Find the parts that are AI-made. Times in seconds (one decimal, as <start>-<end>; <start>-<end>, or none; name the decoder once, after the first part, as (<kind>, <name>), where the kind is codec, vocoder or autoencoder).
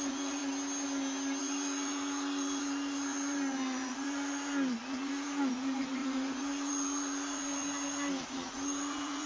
0.0-0.4 (vocoder, Vocos); 1.4-9.3